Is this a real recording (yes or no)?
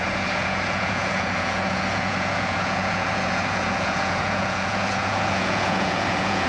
no